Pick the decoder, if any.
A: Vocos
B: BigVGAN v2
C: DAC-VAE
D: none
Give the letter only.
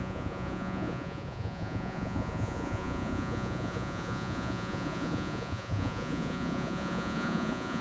A